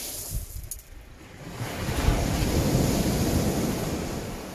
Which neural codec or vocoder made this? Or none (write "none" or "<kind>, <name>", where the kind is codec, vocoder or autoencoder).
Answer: none